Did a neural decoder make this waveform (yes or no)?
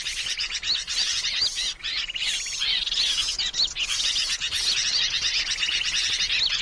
no